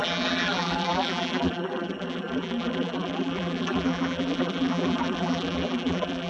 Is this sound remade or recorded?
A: remade